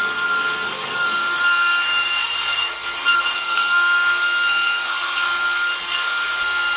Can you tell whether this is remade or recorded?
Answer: remade